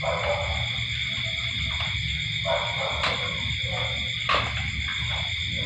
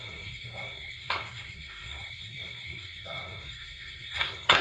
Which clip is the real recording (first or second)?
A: first